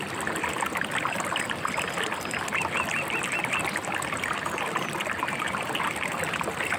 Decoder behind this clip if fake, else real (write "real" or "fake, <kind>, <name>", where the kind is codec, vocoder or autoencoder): real